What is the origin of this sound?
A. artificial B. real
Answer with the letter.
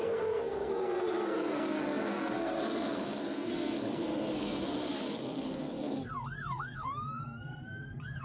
A